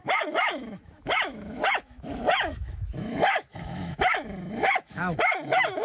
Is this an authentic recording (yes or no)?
no